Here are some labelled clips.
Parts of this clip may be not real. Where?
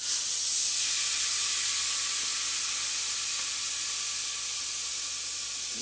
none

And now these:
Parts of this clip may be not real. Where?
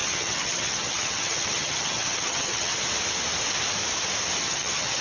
0.0-2.7 (vocoder, HiFi-GAN); 4.4-5.0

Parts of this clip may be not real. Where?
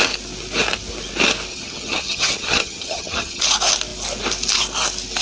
1.5-3.4 (vocoder, HiFi-GAN)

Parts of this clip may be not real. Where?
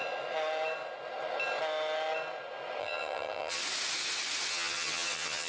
2.8-3.6 (vocoder, HiFi-GAN); 4.5-5.5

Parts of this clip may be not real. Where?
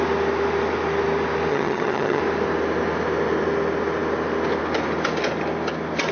1.5-2.2 (vocoder, HiFi-GAN)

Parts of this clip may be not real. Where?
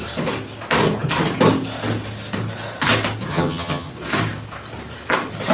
3.3-3.9 (vocoder, HiFi-GAN)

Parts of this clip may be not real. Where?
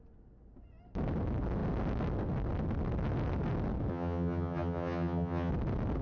3.9-5.5 (vocoder, HiFi-GAN)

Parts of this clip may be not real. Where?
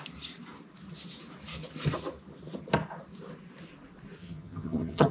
4.2-5.1 (vocoder, HiFi-GAN)